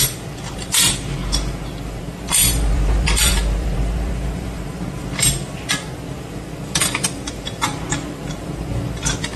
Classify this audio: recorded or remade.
remade